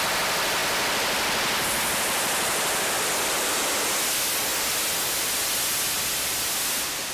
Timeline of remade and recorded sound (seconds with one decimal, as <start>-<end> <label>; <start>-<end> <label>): 0.0-7.1 recorded